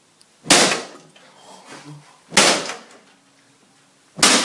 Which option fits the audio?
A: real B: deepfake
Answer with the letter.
A